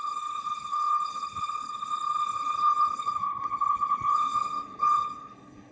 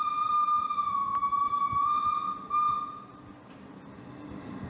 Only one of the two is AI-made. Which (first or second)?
first